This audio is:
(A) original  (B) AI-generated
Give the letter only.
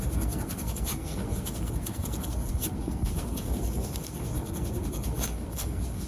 B